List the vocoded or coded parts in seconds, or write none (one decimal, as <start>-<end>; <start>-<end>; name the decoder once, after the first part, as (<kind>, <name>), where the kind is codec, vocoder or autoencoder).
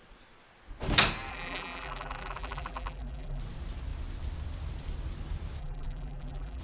1.3-3.4 (vocoder, BigVGAN v2); 5.6-6.6